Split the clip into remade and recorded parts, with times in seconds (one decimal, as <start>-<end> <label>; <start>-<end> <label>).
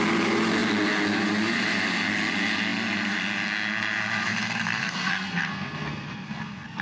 0.0-4.3 recorded; 4.3-6.8 remade